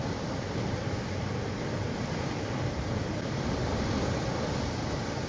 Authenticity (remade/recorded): recorded